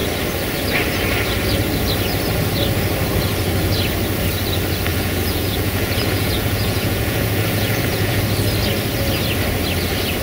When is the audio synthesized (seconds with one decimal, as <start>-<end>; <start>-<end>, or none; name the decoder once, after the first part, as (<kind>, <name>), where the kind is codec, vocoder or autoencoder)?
4.9-8.2 (vocoder, Vocos)